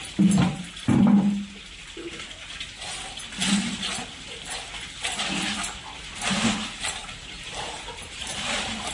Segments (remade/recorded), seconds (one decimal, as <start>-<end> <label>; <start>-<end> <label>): 0.0-7.0 recorded; 7.0-8.9 remade

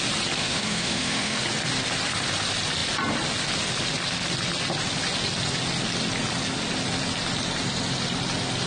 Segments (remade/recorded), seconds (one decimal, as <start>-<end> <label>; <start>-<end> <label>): 0.0-0.4 recorded; 0.4-1.4 remade; 1.4-8.7 recorded

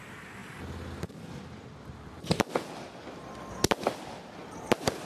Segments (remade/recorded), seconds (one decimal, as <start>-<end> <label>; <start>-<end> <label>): 0.0-5.1 recorded

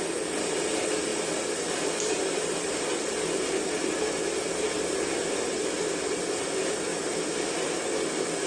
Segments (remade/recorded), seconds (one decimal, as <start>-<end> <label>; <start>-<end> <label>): 0.0-8.5 recorded

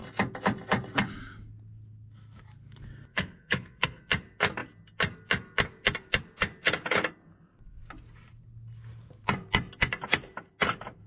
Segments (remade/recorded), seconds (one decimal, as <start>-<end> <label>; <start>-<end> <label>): 0.0-3.1 recorded; 3.1-4.0 remade; 4.0-11.1 recorded

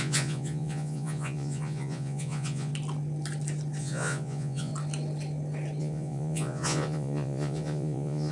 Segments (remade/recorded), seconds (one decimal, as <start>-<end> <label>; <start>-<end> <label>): 0.0-2.7 remade; 2.7-3.8 recorded; 3.8-4.7 remade; 4.7-5.8 recorded; 5.8-8.3 remade